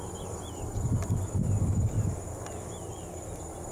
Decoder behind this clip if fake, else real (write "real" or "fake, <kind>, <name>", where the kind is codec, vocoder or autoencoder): fake, vocoder, BigVGAN v2